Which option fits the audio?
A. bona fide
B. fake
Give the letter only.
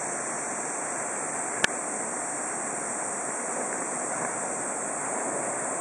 A